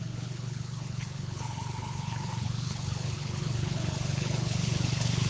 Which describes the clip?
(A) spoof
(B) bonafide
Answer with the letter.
A